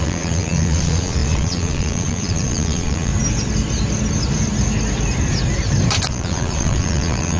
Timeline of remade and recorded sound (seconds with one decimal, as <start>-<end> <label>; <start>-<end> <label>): 0.0-3.1 remade; 3.1-6.1 recorded; 6.1-7.4 remade